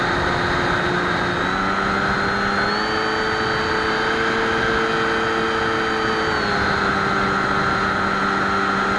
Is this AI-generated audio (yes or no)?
no